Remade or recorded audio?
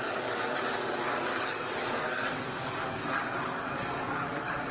remade